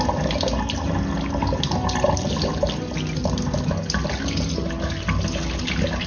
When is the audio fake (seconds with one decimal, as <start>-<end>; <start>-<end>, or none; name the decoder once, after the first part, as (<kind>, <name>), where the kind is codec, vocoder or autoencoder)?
none